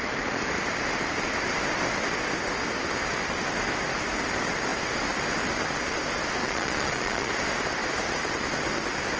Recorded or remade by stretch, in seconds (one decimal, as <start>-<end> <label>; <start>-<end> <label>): 0.0-6.4 recorded; 6.4-7.3 remade; 7.3-9.2 recorded